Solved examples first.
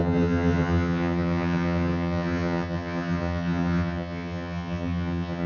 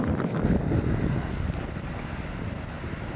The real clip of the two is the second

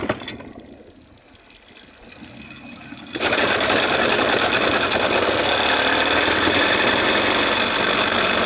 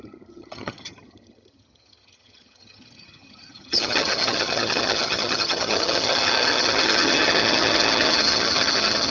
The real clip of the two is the first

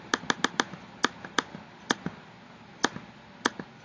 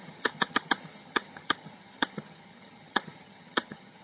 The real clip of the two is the first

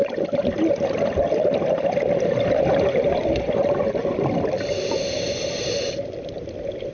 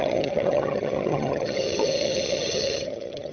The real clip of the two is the first